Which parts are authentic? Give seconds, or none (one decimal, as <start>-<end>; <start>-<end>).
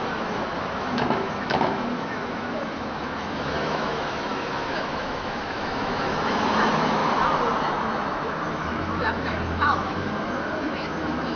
7.0-7.6